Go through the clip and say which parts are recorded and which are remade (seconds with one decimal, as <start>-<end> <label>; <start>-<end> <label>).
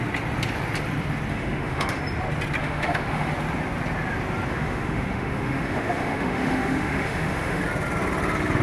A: 0.0-1.3 recorded; 1.3-2.0 remade; 2.0-2.6 recorded; 2.6-3.3 remade; 3.3-4.5 recorded; 4.5-7.6 remade; 7.6-8.6 recorded